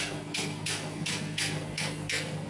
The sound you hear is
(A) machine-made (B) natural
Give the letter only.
A